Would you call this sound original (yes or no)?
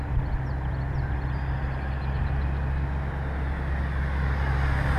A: yes